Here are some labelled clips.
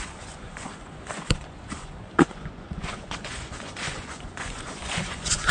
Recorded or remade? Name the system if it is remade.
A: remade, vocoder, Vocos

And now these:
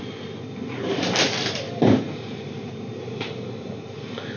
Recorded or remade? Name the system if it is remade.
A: remade, vocoder, BigVGAN v2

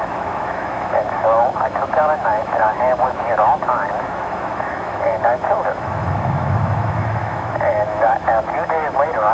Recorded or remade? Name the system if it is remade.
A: remade, autoencoder, DAC-VAE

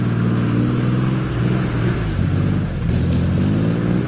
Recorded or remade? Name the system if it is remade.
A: recorded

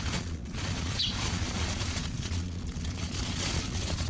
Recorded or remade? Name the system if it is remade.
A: remade, vocoder, Vocos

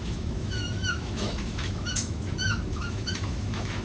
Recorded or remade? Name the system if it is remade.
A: remade, autoencoder, DAC-VAE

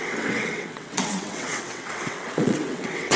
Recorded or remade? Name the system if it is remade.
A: remade, vocoder, WaveNeXt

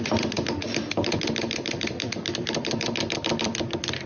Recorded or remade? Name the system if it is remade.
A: remade, vocoder, BigVGAN v2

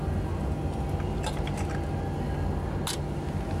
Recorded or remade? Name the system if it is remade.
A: recorded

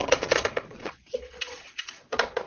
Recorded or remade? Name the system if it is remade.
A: remade, vocoder, Vocos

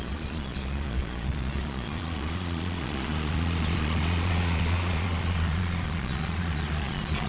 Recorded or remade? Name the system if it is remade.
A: remade, vocoder, Vocos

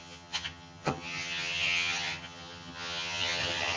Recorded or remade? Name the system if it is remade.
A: remade, vocoder, HiFi-GAN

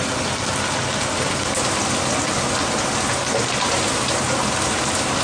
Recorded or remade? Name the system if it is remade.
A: recorded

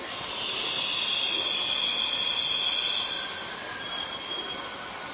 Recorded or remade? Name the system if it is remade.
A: recorded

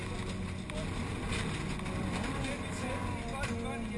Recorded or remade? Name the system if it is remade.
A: recorded